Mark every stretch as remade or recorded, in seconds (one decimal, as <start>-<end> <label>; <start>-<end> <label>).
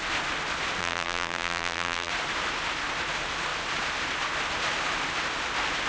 0.0-0.8 recorded; 0.8-2.1 remade; 2.1-5.9 recorded